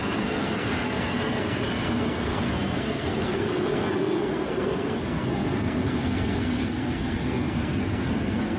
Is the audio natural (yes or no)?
no